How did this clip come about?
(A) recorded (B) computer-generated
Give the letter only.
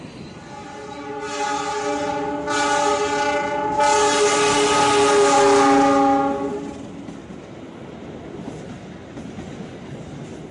A